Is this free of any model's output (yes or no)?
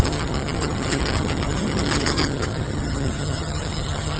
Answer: no